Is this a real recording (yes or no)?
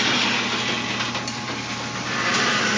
yes